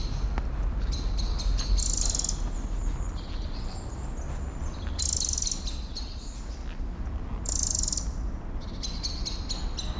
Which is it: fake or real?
real